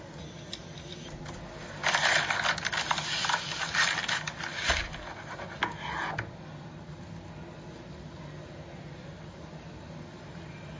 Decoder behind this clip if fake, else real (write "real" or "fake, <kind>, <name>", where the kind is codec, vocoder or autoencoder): real